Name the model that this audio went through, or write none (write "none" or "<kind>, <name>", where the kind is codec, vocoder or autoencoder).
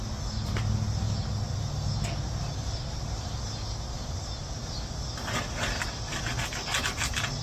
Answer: none